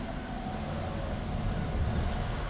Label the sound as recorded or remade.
recorded